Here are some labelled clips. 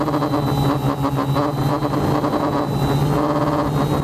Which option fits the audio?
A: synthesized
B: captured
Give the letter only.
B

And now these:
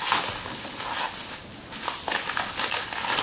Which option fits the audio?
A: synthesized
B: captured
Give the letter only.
B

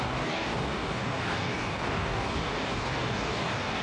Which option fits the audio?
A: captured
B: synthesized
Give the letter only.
B